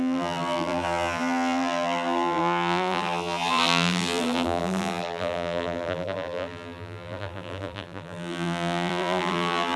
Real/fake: fake